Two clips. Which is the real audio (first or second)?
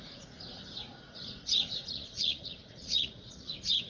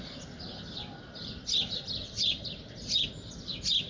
second